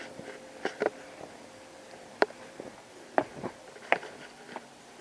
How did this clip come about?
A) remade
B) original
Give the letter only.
A